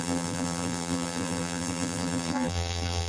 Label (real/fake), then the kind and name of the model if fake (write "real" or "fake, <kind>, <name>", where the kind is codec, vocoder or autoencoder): fake, vocoder, BigVGAN v2